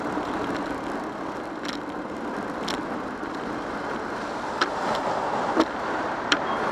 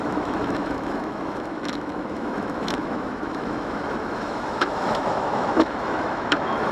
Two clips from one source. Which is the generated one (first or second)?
second